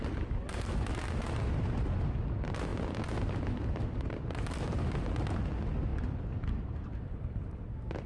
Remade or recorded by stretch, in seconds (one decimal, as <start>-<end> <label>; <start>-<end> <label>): 0.0-8.1 recorded